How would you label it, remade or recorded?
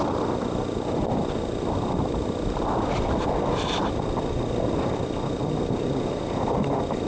recorded